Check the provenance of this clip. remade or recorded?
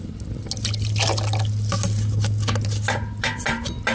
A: recorded